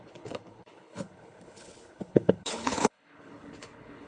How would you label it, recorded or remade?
remade